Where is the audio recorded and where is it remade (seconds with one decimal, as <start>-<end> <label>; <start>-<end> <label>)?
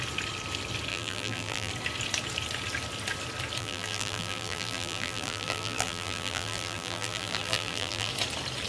0.0-0.9 recorded; 0.9-1.7 remade; 1.7-3.6 recorded; 3.6-8.1 remade; 8.1-8.7 recorded